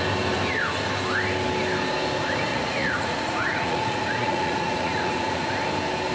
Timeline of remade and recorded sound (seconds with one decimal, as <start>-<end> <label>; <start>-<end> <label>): 0.0-2.5 recorded; 2.5-5.5 remade; 5.5-6.1 recorded